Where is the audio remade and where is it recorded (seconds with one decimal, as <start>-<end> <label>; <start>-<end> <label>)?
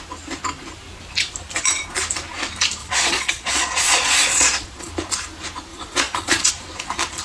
0.0-2.8 recorded; 2.8-4.9 remade; 4.9-5.7 recorded; 5.7-6.5 remade; 6.5-7.2 recorded